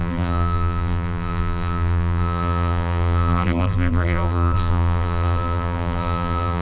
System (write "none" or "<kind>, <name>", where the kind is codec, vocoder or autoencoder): vocoder, BigVGAN v2